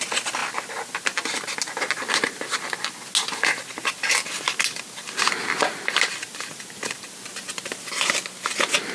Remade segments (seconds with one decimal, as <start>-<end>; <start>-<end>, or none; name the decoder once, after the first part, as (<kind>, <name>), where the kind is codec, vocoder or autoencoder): none